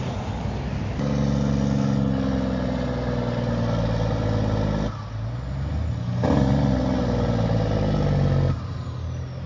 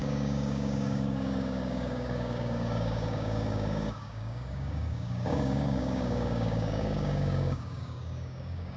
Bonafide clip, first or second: first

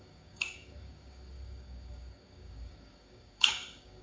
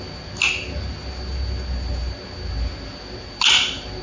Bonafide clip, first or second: second